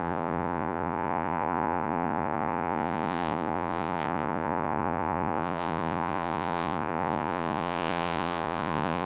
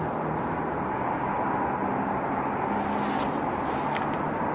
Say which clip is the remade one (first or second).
first